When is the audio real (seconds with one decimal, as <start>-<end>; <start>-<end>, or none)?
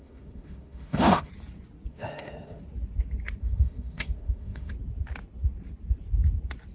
1.3-1.9; 2.6-3.4; 4.7-6.7